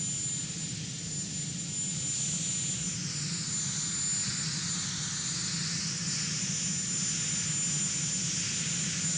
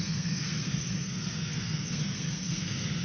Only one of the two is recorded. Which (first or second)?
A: first